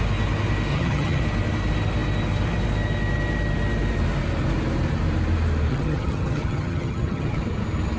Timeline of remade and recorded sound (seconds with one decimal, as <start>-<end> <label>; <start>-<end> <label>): 0.0-0.7 recorded; 0.7-1.2 remade; 1.2-5.7 recorded; 5.7-7.4 remade; 7.4-8.0 recorded